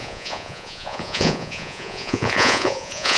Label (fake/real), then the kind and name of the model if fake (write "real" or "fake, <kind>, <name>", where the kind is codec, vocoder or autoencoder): fake, vocoder, Vocos